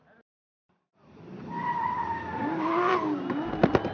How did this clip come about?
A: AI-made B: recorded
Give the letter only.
A